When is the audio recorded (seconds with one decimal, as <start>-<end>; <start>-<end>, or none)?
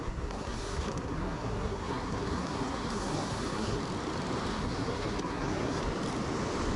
3.8-4.5; 5.8-6.8